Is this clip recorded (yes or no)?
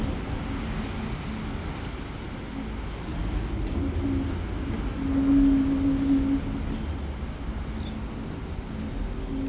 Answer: yes